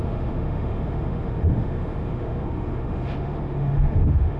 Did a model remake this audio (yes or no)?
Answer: yes